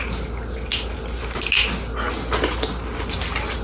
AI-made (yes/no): no